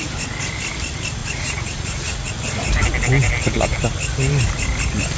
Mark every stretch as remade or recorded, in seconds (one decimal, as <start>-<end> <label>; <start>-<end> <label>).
0.0-1.2 recorded; 1.2-2.3 remade; 2.3-5.2 recorded